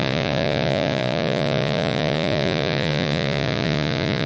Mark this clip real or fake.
fake